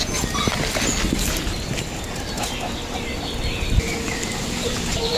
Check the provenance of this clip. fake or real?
real